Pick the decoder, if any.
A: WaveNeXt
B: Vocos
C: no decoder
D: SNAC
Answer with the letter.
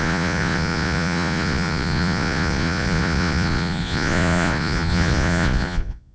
B